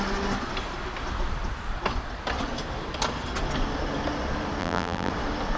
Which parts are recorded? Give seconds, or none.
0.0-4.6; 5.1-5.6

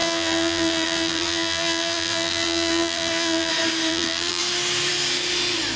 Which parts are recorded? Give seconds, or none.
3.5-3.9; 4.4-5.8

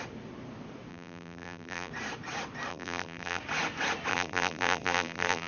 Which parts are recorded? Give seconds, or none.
0.0-0.9; 1.9-2.7; 3.4-4.1